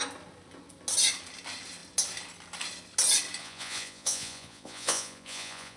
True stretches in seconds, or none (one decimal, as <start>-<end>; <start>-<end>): 0.0-3.4